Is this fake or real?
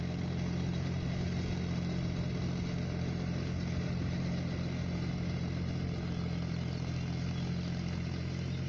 real